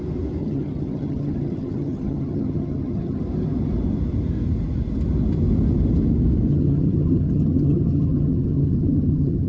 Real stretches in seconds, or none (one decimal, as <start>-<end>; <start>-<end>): 0.0-0.4; 3.2-6.5